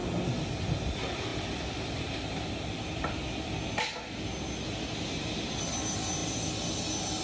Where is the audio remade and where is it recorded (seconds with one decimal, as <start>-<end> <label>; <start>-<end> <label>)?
0.0-7.2 recorded